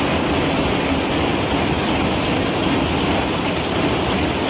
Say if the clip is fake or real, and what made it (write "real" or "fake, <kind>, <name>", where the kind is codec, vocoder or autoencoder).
real